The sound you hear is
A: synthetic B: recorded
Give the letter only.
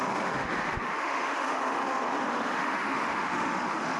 A